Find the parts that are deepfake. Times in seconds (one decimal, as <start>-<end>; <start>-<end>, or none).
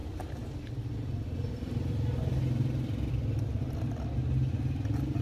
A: none